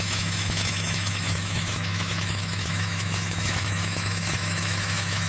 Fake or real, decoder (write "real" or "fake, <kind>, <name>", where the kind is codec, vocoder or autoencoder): fake, autoencoder, DAC-VAE